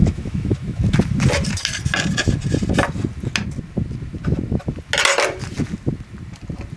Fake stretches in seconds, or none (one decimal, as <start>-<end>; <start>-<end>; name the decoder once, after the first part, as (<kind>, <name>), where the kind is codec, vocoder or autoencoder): 0.0-0.8 (autoencoder, DAC-VAE)